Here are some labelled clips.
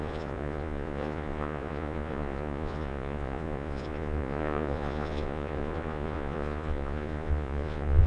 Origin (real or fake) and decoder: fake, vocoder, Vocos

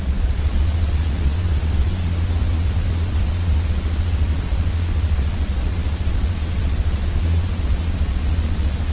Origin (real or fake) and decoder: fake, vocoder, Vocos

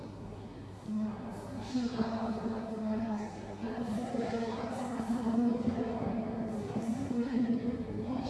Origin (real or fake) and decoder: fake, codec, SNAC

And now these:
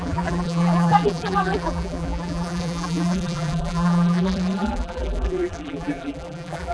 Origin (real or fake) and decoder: fake, vocoder, BigVGAN v2